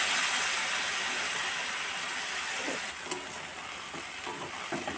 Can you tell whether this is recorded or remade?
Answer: recorded